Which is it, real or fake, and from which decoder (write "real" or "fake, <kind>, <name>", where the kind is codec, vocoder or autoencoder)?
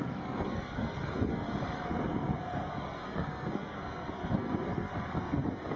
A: fake, codec, SNAC